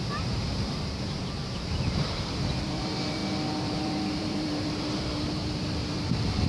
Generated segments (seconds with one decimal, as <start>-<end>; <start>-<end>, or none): 0.0-3.2; 3.7-6.5